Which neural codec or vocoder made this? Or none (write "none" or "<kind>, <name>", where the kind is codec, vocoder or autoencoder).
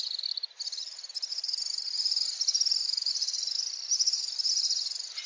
none